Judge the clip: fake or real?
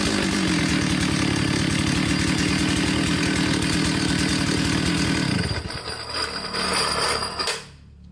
real